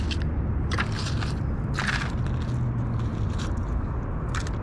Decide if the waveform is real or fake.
real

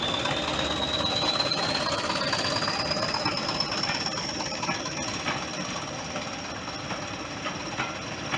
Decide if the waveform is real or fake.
real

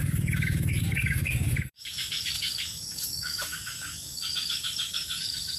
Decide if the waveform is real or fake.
fake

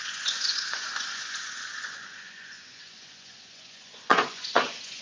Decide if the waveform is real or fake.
fake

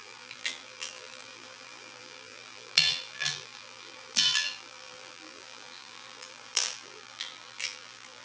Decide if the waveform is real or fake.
fake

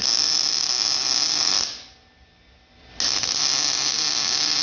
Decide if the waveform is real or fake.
real